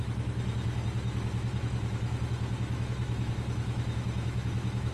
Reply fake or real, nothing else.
fake